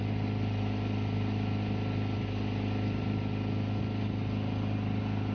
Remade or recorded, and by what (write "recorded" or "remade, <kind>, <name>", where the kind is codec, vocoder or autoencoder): recorded